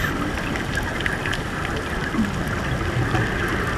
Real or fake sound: real